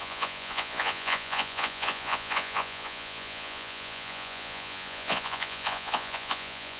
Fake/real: fake